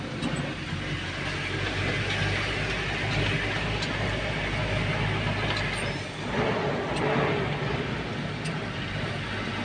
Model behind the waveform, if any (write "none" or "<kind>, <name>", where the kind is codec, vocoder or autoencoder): none